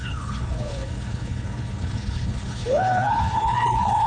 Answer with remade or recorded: remade